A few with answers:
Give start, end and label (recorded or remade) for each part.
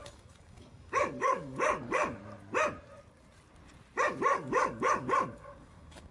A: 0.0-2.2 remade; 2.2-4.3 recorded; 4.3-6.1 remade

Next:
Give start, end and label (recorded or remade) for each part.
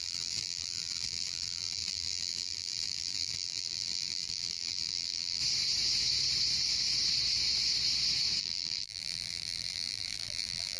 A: 0.0-5.4 remade; 5.4-8.4 recorded; 8.4-10.8 remade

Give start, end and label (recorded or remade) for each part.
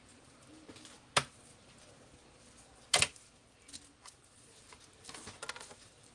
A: 0.0-6.1 recorded